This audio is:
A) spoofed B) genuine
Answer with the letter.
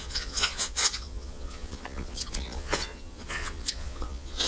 A